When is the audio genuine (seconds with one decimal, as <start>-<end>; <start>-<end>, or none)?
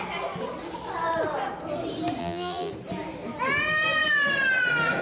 0.0-2.2; 2.7-5.0